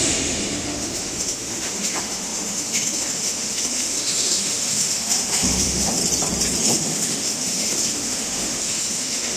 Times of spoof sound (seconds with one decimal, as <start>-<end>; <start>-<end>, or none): 0.0-6.0; 6.6-9.4